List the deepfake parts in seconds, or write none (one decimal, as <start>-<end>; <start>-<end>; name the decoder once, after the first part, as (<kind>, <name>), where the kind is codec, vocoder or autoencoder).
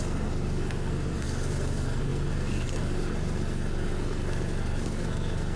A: 0.0-5.6 (codec, SNAC)